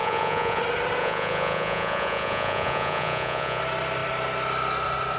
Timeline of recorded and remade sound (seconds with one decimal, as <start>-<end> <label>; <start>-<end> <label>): 0.0-0.6 remade; 0.6-1.0 recorded; 1.0-3.6 remade; 3.6-5.2 recorded